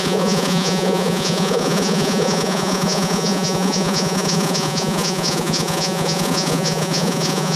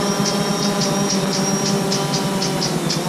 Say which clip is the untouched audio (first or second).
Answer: second